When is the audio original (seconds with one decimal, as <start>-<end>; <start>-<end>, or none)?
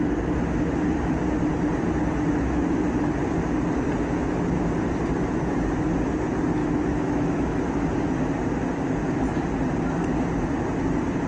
0.0-6.6; 7.7-11.3